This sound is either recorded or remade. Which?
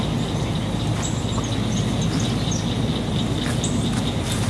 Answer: recorded